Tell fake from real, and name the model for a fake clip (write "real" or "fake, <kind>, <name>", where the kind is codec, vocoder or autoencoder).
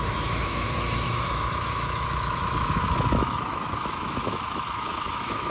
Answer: fake, autoencoder, DAC-VAE